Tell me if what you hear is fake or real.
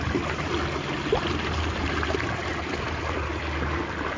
real